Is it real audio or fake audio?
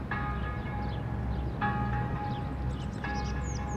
real